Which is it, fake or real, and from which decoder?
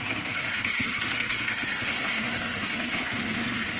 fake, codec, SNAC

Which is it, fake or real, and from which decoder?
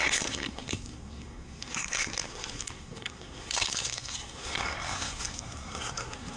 fake, codec, SNAC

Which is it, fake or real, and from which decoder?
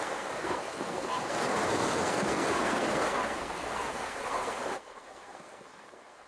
fake, codec, SNAC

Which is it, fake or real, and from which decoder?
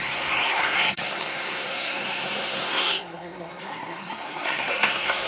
fake, codec, SNAC